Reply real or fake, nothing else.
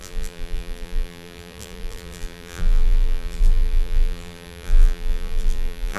fake